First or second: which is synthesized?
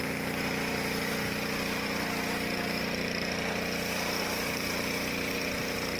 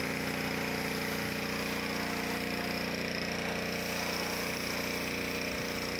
first